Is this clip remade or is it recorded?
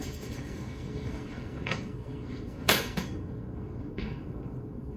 remade